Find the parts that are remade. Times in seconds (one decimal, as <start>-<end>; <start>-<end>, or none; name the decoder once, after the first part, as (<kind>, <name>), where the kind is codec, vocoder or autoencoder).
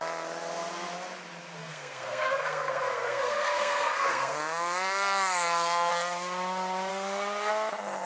1.6-5.9 (codec, SNAC); 6.9-7.5